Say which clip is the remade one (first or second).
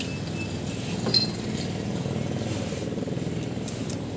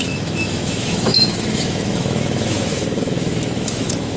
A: second